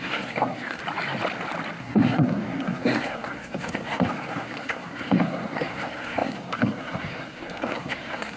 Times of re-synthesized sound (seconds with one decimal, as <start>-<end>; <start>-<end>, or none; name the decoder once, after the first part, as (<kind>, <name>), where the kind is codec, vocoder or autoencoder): 0.0-0.8 (codec, SNAC); 1.8-8.4